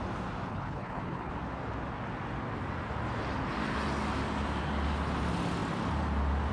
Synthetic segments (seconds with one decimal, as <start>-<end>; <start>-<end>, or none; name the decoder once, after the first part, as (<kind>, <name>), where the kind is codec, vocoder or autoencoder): 0.5-1.3 (codec, HILCodec)